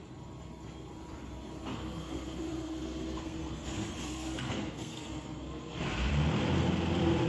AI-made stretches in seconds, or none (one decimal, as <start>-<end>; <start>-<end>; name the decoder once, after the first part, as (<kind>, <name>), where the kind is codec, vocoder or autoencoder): 1.7-6.1 (codec, SNAC)